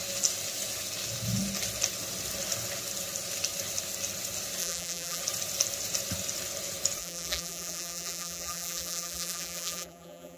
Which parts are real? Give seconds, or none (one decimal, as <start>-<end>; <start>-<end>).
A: 0.0-4.6; 5.2-7.0